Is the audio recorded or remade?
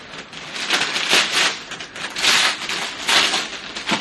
recorded